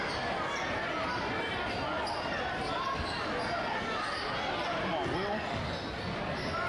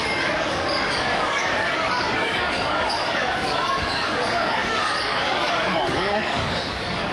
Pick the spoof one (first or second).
second